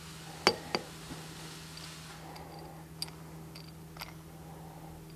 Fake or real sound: real